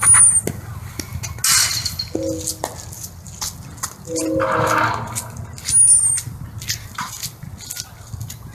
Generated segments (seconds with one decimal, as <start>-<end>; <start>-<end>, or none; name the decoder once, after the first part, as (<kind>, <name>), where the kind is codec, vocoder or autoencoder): none